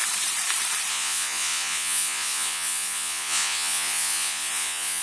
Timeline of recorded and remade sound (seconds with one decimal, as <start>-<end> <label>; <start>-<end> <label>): 0.0-0.9 recorded; 0.9-5.0 remade